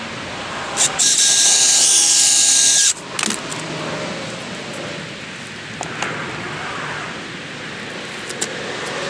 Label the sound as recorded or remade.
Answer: recorded